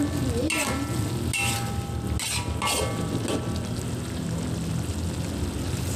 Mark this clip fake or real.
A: real